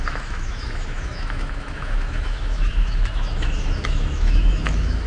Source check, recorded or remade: remade